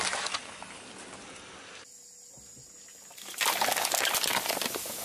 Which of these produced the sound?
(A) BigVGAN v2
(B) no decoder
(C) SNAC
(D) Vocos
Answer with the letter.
B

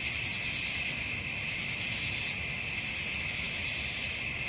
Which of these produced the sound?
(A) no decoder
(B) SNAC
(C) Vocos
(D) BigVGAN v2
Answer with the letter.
A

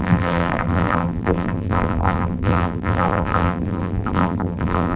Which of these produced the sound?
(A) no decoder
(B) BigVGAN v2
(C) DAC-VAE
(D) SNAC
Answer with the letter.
B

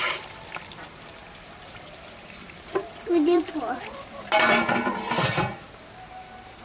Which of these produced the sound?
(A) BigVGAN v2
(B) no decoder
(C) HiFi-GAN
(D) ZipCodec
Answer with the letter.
A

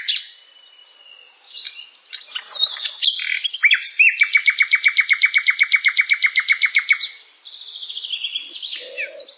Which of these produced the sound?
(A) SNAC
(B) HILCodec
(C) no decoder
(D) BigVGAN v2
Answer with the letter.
C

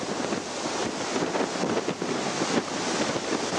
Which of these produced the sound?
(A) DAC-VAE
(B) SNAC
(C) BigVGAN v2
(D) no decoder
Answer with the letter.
D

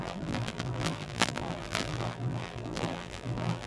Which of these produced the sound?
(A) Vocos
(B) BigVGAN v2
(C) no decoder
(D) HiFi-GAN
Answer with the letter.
B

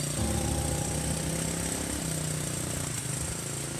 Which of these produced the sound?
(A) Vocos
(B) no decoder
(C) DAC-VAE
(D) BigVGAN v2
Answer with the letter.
B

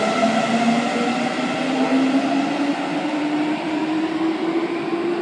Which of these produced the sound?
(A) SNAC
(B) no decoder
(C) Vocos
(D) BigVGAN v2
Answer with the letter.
B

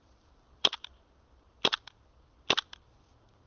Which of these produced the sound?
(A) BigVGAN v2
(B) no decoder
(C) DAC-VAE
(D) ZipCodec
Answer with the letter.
A